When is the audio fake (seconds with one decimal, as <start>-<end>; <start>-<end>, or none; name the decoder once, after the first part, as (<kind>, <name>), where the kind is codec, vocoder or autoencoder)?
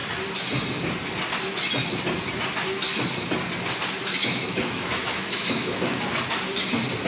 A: 4.2-6.0 (autoencoder, DAC-VAE)